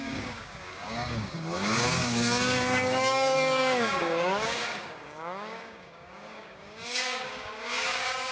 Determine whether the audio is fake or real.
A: fake